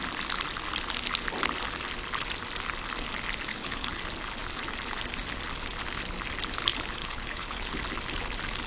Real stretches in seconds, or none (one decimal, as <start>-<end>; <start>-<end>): 0.0-3.5; 4.0-6.7; 7.7-8.7